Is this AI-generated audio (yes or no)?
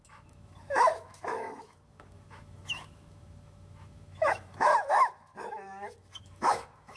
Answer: yes